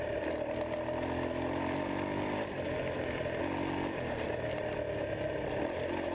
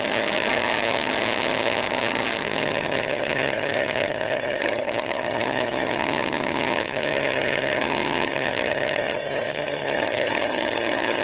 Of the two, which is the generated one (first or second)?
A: second